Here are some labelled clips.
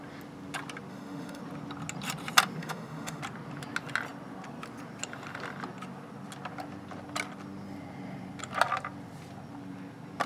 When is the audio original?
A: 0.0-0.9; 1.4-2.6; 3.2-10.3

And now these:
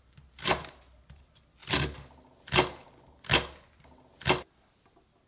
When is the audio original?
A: 0.0-5.3

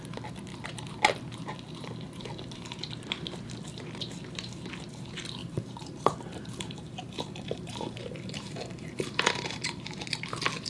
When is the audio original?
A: 0.0-5.4; 9.8-10.7

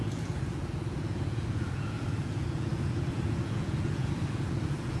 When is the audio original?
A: none